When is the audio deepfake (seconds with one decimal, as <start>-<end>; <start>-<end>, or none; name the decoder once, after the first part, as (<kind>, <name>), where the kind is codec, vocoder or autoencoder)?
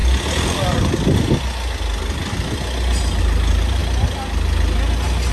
3.2-3.8 (vocoder, BigVGAN v2)